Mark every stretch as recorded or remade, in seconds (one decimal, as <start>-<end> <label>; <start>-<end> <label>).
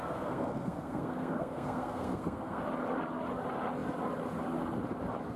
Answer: 0.0-2.6 remade; 2.6-5.4 recorded